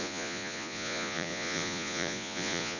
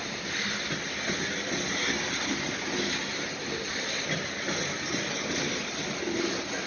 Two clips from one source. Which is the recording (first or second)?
second